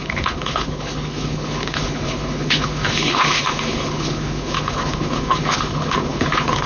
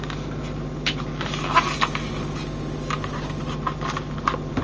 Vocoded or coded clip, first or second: first